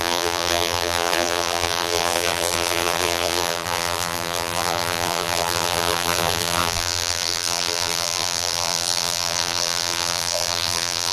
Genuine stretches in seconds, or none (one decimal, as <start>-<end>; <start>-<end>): none